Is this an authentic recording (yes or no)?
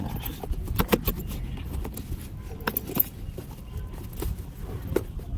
yes